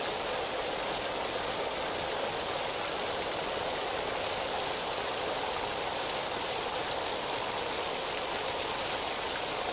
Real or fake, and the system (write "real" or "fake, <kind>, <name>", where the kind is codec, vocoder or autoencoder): real